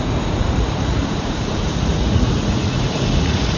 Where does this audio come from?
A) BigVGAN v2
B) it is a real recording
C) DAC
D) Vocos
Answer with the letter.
D